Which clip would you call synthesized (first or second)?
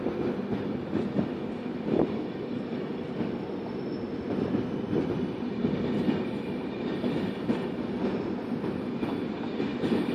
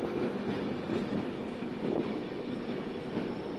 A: first